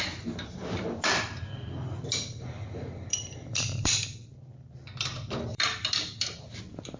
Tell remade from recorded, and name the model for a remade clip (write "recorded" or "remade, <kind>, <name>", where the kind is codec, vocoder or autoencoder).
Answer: remade, vocoder, BigVGAN v2